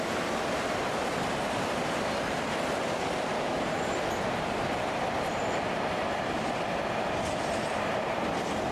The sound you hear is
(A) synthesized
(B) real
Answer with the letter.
B